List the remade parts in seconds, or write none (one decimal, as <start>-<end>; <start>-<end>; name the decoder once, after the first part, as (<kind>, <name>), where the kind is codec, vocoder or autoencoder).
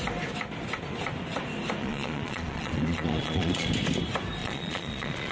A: 1.8-3.7 (vocoder, Vocos); 4.4-5.3